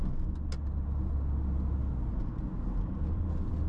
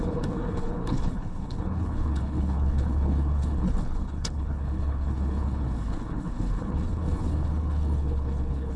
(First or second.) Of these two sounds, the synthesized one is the second